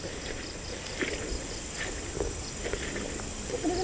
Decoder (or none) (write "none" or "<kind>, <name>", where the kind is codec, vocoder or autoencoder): none